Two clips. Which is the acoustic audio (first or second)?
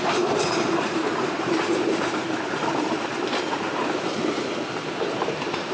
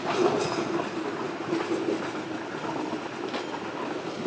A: second